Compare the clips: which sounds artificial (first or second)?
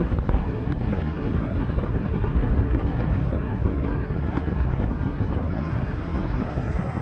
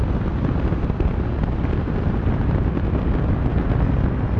first